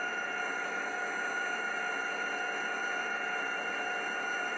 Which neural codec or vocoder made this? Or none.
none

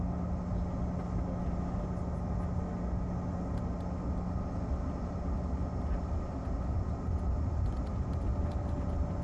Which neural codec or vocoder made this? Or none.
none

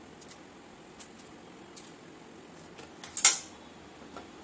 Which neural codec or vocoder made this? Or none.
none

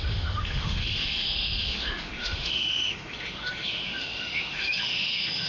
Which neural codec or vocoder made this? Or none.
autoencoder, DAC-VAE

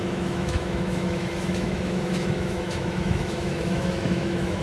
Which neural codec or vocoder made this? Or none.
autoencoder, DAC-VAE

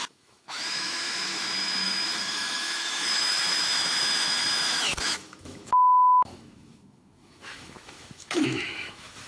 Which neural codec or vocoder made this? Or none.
autoencoder, DAC-VAE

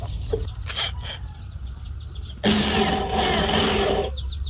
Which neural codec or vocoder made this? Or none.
none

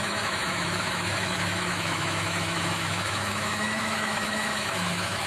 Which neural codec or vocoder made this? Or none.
autoencoder, DAC-VAE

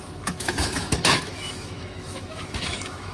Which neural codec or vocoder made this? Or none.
autoencoder, DAC-VAE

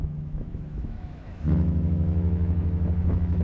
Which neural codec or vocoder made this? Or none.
autoencoder, DAC-VAE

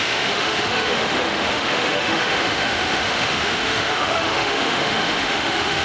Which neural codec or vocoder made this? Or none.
autoencoder, DAC-VAE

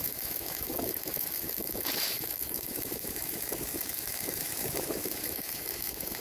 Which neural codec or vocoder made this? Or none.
autoencoder, DAC-VAE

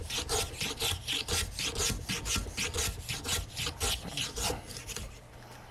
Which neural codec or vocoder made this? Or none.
none